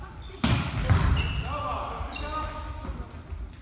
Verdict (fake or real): real